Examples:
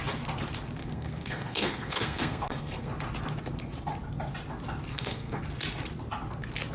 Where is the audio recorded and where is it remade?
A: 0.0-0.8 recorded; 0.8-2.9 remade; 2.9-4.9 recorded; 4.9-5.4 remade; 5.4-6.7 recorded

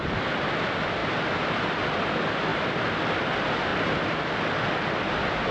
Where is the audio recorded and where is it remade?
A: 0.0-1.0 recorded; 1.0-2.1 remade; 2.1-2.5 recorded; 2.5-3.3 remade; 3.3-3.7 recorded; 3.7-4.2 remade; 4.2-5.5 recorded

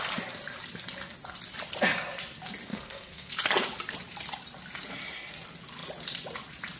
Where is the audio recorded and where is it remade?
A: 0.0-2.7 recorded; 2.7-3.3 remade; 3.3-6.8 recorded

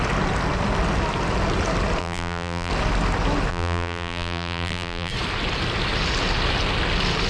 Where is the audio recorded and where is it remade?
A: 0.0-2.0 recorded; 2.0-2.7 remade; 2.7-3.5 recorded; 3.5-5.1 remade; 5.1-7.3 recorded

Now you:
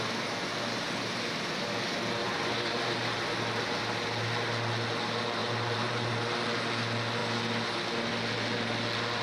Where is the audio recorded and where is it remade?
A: 0.0-2.2 recorded; 2.2-3.2 remade; 3.2-5.4 recorded; 5.4-6.1 remade; 6.1-9.2 recorded

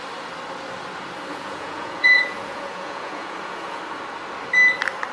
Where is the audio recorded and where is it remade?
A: 0.0-1.3 recorded; 1.3-3.8 remade; 3.8-5.1 recorded

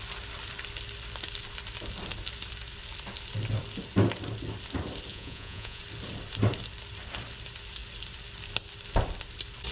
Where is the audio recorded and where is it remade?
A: 0.0-5.1 recorded; 5.1-5.8 remade; 5.8-9.7 recorded